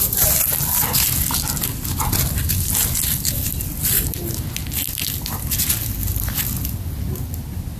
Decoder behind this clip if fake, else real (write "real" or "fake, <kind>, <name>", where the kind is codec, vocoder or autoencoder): real